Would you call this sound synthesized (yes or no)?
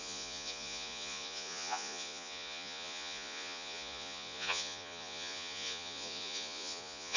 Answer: yes